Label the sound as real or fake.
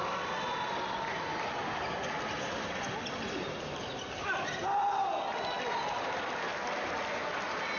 real